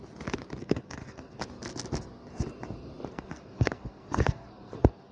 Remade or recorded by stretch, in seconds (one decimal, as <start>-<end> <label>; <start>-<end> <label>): 0.0-0.6 recorded; 0.6-1.4 remade; 1.4-3.1 recorded; 3.1-5.1 remade

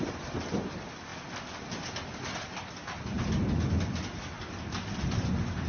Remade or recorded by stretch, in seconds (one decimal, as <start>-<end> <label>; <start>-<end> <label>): 0.0-5.7 recorded

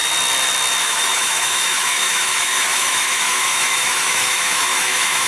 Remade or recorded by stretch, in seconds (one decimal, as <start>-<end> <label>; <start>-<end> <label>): 0.0-0.8 recorded; 0.8-5.3 remade

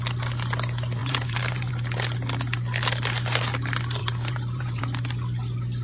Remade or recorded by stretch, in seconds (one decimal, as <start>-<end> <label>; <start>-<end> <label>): 0.0-1.0 recorded; 1.0-1.7 remade; 1.7-4.0 recorded; 4.0-4.8 remade; 4.8-5.8 recorded

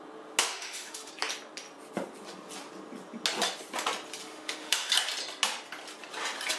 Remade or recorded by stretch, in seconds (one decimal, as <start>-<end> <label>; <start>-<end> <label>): 0.0-0.4 recorded; 0.4-1.1 remade; 1.1-4.2 recorded; 4.2-4.9 remade; 4.9-6.6 recorded

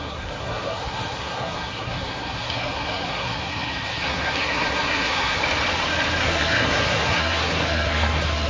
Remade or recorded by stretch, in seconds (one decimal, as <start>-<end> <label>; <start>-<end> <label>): 0.0-5.4 remade; 5.4-6.2 recorded; 6.2-8.5 remade

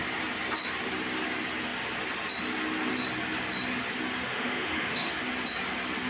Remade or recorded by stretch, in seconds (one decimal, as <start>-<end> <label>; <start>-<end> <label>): 0.0-4.3 recorded; 4.3-5.1 remade; 5.1-6.1 recorded

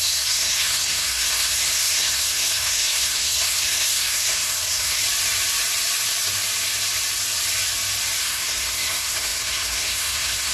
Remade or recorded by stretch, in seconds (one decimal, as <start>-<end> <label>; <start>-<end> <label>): 0.0-5.0 remade; 5.0-8.2 recorded; 8.2-10.5 remade